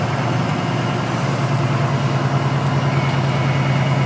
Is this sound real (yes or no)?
yes